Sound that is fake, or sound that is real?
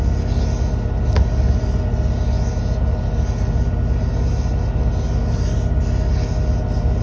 real